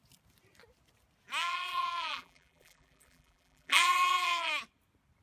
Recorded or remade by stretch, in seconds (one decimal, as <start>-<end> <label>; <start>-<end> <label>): 0.0-1.4 recorded; 1.4-4.5 remade; 4.5-5.2 recorded